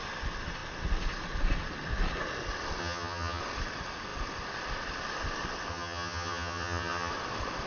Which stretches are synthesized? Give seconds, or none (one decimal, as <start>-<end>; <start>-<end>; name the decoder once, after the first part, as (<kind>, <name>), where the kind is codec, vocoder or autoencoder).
2.8-3.4 (vocoder, HiFi-GAN); 5.7-7.1